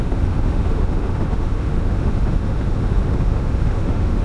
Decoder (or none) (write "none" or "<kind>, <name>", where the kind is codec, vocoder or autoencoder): autoencoder, DAC-VAE